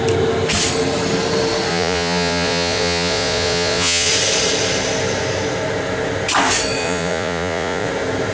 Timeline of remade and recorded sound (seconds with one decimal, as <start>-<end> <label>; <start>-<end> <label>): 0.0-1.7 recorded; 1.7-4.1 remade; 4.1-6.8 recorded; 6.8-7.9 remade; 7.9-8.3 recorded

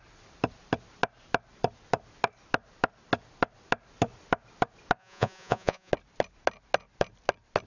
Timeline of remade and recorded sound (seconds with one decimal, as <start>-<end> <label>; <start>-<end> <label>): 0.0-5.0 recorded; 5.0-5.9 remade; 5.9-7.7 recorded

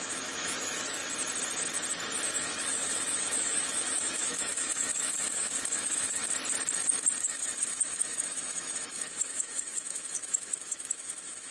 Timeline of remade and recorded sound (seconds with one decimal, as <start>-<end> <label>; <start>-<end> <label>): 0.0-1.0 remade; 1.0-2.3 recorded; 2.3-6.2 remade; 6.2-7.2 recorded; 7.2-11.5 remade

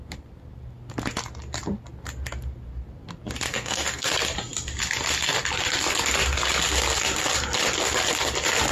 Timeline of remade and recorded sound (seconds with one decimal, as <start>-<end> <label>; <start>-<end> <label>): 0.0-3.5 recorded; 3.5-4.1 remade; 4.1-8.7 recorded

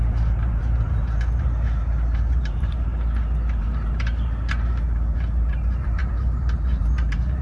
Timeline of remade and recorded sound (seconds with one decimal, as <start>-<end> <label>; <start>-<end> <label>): 0.0-2.9 remade; 2.9-3.6 recorded; 3.6-7.4 remade

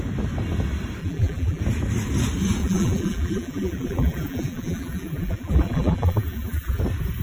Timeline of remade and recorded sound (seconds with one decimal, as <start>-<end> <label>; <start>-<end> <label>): 0.0-1.0 recorded; 1.0-1.6 remade; 1.6-2.6 recorded; 2.6-6.8 remade; 6.8-7.2 recorded